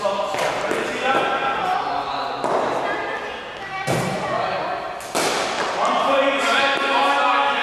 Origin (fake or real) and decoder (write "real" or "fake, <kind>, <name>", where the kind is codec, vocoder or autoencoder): real